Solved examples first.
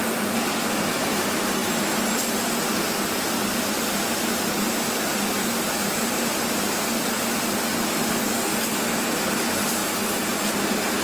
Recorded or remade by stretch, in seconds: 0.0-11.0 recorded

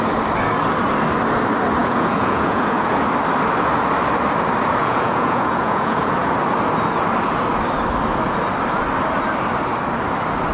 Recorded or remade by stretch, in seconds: 0.0-1.8 recorded; 1.8-3.0 remade; 3.0-4.8 recorded; 4.8-6.0 remade; 6.0-10.5 recorded

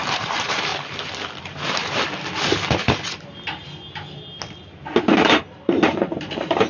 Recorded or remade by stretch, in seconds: 0.0-0.7 remade; 0.7-1.4 recorded; 1.4-1.8 remade; 1.8-5.0 recorded; 5.0-6.7 remade

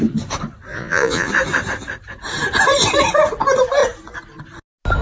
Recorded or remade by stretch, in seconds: 0.0-0.7 recorded; 0.7-1.3 remade; 1.3-5.0 recorded

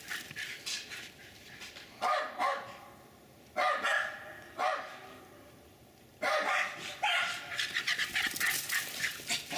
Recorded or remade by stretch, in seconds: 0.0-9.6 recorded